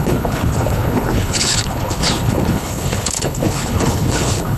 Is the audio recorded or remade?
remade